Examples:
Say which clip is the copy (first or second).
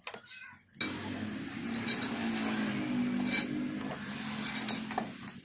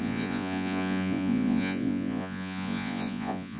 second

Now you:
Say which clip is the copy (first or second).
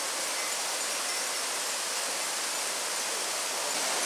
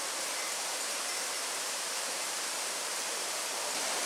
second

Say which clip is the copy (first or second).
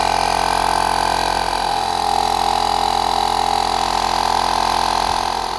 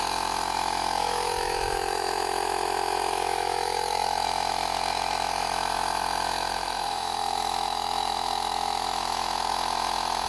second